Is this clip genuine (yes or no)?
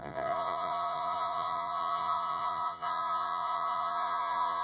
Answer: no